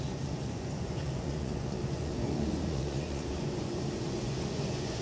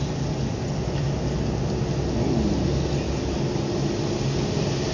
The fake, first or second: first